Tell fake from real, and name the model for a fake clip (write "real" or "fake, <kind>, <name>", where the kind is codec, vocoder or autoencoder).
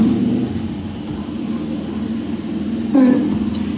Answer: real